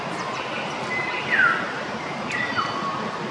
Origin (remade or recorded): recorded